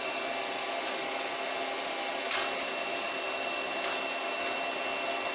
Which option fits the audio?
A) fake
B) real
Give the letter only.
B